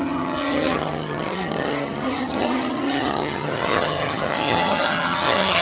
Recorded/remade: remade